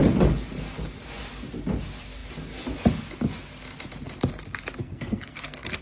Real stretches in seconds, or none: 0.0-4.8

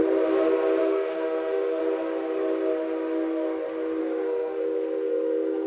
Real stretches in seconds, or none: 0.0-0.8; 1.8-4.0

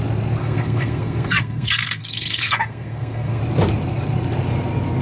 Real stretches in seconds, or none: 0.0-0.4; 3.4-5.0

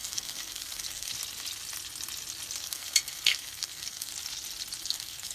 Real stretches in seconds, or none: 1.1-2.6; 4.1-4.8

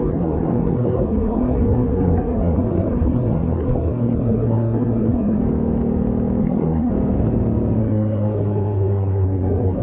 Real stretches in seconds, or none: 5.4-6.4; 6.9-7.8

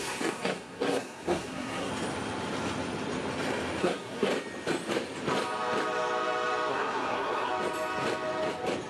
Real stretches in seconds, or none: 1.9-3.8; 4.3-6.7; 7.5-8.9